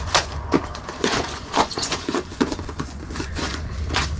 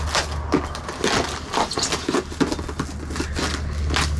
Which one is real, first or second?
second